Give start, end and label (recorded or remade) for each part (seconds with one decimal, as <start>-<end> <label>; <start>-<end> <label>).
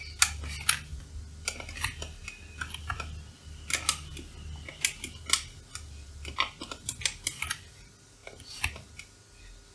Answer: 0.0-9.7 recorded